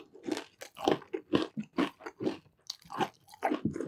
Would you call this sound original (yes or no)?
yes